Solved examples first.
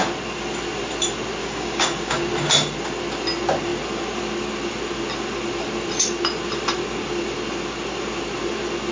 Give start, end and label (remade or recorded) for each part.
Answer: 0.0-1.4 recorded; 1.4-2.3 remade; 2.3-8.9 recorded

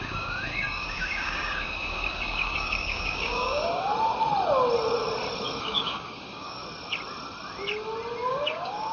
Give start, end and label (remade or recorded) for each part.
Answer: 0.0-3.9 remade; 3.9-5.6 recorded; 5.6-6.6 remade; 6.6-8.3 recorded; 8.3-8.9 remade

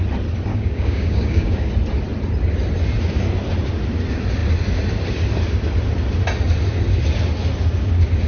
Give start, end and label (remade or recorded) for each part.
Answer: 0.0-0.5 recorded; 0.5-1.7 remade; 1.7-8.3 recorded

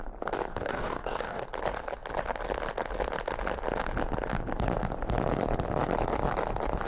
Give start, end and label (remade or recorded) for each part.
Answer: 0.0-0.5 recorded; 0.5-1.4 remade; 1.4-6.9 recorded

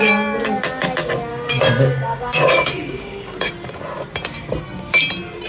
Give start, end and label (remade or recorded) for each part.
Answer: 0.0-1.3 recorded; 1.3-3.5 remade; 3.5-5.5 recorded

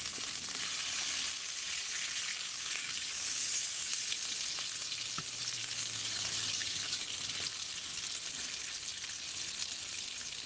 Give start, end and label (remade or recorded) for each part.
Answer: 0.0-2.3 recorded; 2.3-4.2 remade; 4.2-5.6 recorded; 5.6-7.1 remade; 7.1-10.5 recorded

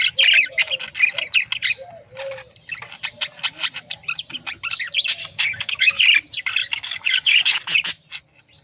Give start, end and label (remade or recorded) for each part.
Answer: 0.0-5.2 recorded; 5.2-6.0 remade; 6.0-6.6 recorded; 6.6-7.6 remade; 7.6-8.6 recorded

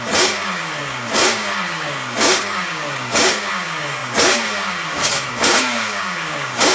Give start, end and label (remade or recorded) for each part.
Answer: 0.0-6.7 remade